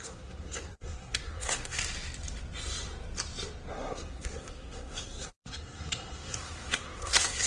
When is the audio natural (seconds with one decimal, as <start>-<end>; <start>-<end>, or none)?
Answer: 1.8-3.7